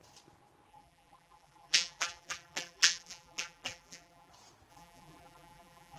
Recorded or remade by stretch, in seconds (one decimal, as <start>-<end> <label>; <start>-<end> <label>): 0.0-0.7 recorded; 0.7-4.3 remade; 4.3-4.7 recorded; 4.7-6.0 remade